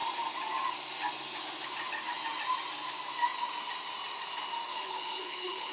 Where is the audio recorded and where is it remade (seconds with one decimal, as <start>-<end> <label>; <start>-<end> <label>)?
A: 0.0-4.7 recorded; 4.7-5.7 remade